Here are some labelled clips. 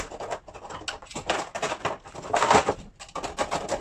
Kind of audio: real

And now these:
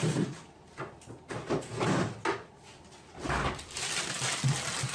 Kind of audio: real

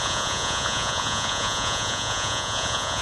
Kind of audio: fake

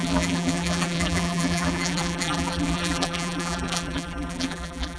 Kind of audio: fake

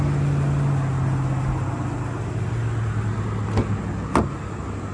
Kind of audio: real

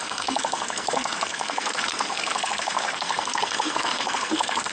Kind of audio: fake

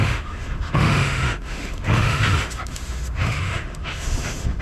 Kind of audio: fake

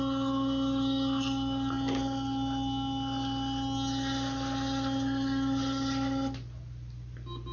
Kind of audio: real